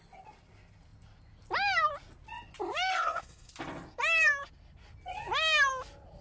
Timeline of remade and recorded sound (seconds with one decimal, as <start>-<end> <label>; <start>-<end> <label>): 0.0-2.9 recorded; 2.9-3.5 remade; 3.5-6.2 recorded